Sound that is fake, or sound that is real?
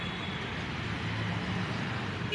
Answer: real